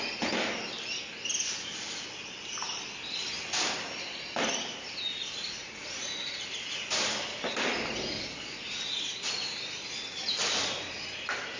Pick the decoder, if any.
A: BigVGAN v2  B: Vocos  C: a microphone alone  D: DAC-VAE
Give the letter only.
C